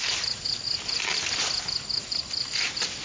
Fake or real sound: real